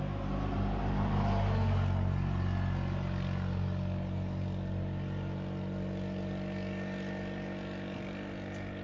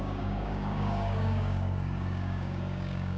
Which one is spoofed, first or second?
second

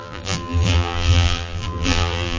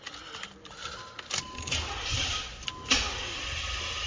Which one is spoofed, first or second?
first